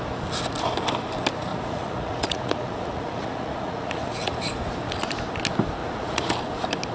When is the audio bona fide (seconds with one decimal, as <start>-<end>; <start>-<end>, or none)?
0.0-1.5; 4.4-5.8; 6.3-6.9